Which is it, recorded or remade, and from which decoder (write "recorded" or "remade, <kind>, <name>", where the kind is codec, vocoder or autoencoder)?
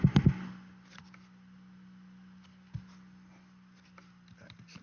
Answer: recorded